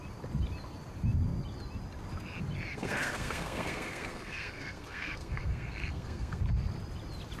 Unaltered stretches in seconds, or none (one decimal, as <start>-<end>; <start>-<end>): 0.0-2.7; 6.4-7.4